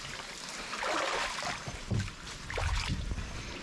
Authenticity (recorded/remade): recorded